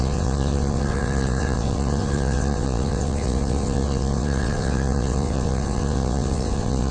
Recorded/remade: remade